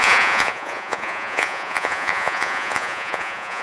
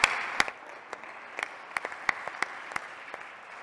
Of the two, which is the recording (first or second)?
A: second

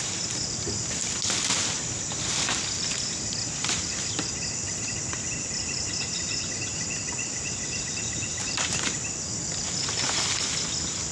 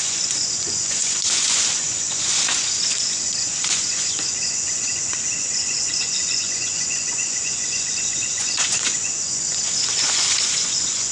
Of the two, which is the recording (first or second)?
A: first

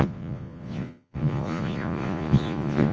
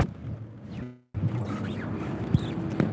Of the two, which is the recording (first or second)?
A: second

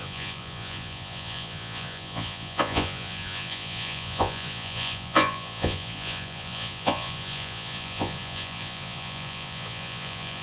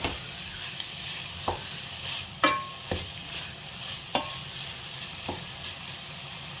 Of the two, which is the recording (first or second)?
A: second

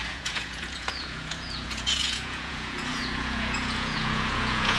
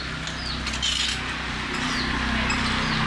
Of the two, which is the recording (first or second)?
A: second